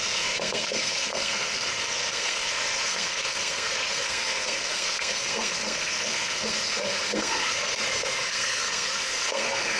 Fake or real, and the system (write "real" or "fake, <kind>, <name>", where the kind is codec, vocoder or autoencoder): fake, codec, SNAC